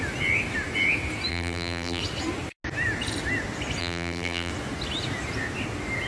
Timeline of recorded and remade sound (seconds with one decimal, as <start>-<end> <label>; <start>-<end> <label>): 0.0-1.3 recorded; 1.3-2.0 remade; 2.0-3.8 recorded; 3.8-4.5 remade; 4.5-6.1 recorded